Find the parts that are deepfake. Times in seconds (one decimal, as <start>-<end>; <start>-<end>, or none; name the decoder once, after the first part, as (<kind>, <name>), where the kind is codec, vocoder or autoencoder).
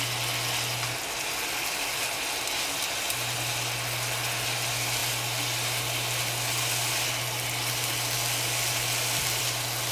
none